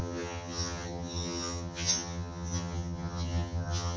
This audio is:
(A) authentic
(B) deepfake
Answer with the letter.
B